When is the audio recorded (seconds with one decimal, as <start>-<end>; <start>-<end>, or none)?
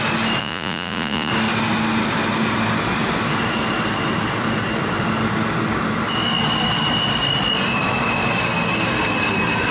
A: 0.0-0.4; 1.3-9.7